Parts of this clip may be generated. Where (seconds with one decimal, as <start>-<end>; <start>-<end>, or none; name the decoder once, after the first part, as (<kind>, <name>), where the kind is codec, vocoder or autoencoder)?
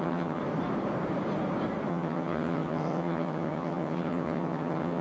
0.0-0.4 (vocoder, HiFi-GAN); 1.9-5.0